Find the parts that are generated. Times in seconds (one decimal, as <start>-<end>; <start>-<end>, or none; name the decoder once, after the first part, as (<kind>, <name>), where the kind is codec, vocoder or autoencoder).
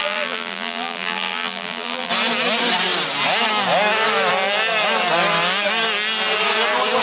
0.0-2.1 (vocoder, BigVGAN v2)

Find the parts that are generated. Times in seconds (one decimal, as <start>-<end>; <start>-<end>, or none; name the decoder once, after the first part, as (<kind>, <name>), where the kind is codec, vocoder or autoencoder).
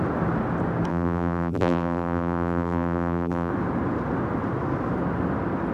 0.9-3.5 (vocoder, BigVGAN v2)